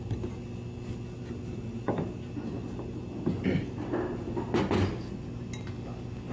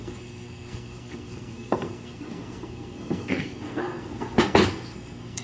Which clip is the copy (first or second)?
second